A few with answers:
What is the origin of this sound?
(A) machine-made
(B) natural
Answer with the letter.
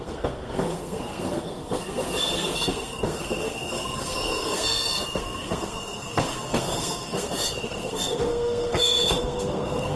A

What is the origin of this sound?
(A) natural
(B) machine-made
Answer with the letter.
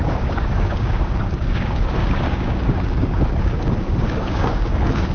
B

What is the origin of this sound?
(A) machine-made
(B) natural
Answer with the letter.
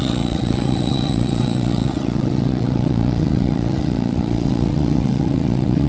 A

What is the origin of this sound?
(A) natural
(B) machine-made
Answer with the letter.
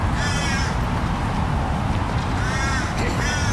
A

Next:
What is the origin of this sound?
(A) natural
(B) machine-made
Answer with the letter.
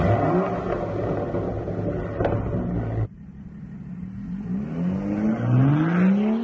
A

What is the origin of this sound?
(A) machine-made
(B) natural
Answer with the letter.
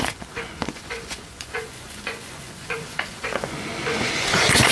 A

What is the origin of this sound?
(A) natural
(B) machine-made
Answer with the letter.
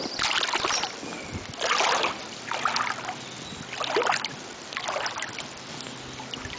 A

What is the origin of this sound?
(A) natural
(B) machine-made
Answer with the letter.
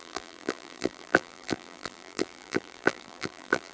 B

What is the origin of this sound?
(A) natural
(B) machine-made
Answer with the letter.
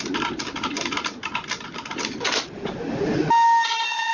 A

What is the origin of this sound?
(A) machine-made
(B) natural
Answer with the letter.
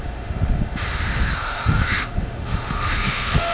A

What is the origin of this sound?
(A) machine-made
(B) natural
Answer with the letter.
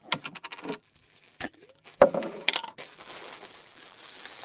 A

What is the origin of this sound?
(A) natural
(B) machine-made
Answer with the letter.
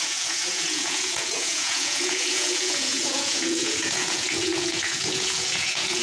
B